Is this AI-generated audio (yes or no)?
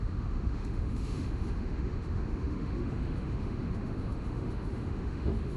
yes